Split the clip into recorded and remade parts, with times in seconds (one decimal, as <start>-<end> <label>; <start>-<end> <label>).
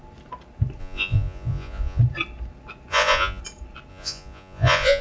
0.0-0.8 recorded; 0.8-2.0 remade; 2.0-2.9 recorded; 2.9-3.4 remade; 3.4-3.9 recorded; 3.9-5.0 remade